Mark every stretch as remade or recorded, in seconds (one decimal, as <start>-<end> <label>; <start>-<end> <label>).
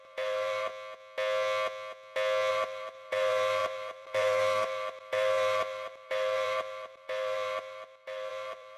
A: 0.0-0.7 remade; 0.7-2.5 recorded; 2.5-8.8 remade